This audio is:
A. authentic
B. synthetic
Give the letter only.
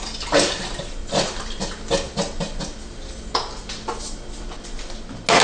A